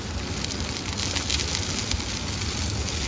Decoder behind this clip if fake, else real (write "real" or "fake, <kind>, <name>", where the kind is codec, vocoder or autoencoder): real